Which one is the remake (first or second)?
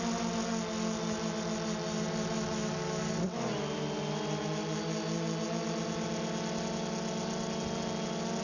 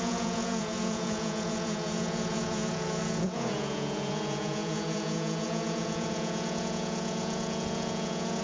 second